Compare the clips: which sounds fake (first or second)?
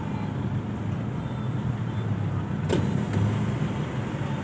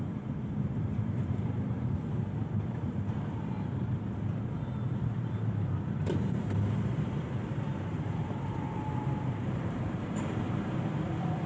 second